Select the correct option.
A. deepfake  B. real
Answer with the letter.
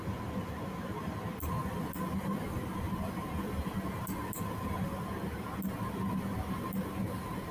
B